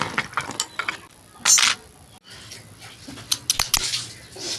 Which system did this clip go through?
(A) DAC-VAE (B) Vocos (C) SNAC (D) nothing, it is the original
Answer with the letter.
D